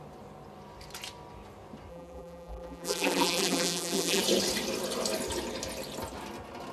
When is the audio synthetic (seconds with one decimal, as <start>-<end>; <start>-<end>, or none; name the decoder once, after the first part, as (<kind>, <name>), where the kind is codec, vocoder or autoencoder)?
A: 1.9-4.2 (vocoder, BigVGAN v2)